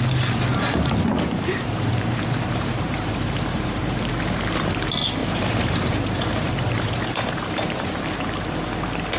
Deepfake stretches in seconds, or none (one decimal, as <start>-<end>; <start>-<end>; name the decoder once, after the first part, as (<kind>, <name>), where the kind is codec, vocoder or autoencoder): 0.5-4.1 (vocoder, BigVGAN v2); 5.2-8.0